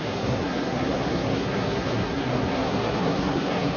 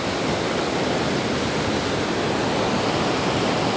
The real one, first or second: second